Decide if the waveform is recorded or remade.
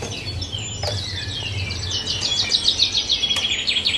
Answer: recorded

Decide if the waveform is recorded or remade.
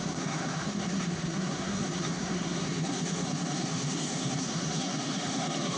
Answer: remade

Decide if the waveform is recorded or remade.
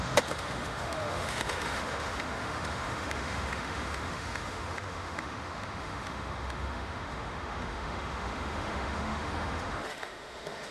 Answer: remade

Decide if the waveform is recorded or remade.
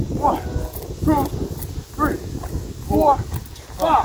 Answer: recorded